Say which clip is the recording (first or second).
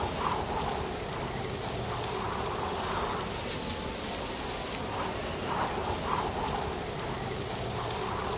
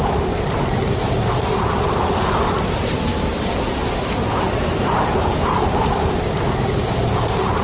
first